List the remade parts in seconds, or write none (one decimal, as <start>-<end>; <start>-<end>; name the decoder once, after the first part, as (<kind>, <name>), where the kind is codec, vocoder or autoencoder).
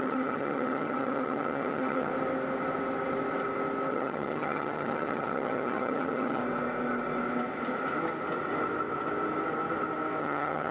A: 0.0-2.1 (vocoder, HiFi-GAN); 3.9-6.4; 10.2-10.7